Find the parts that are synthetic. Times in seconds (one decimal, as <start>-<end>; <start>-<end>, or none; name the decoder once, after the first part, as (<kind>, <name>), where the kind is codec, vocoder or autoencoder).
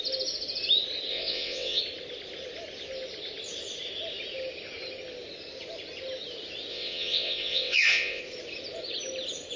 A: 1.1-1.8 (vocoder, WaveNeXt); 6.7-8.2